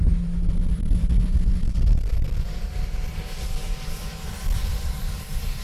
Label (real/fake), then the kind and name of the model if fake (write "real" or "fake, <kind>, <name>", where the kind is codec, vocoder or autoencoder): fake, vocoder, BigVGAN v2